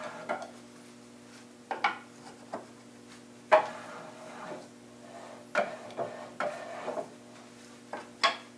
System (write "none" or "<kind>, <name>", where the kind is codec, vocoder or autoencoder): none